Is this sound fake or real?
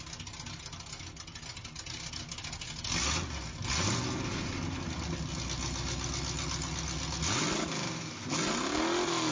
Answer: real